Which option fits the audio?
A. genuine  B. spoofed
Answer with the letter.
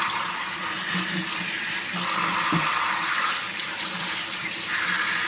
A